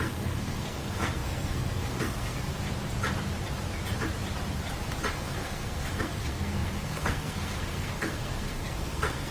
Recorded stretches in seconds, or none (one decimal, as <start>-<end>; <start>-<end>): 2.5-5.1